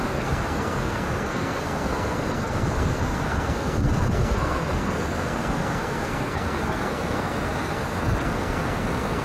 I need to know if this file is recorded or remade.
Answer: remade